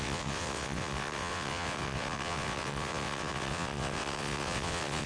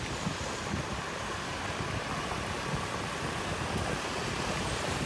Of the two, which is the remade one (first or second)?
first